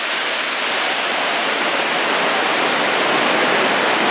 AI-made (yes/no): no